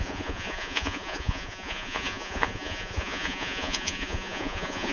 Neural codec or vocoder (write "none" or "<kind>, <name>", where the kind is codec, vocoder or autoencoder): vocoder, Vocos